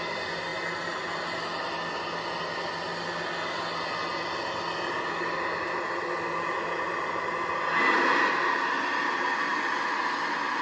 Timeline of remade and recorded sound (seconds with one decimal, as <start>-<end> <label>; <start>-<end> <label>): 0.0-10.6 recorded